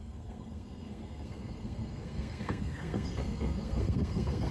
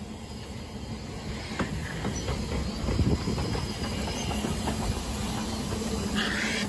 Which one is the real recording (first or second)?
second